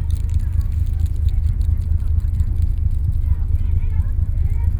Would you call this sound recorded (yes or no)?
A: no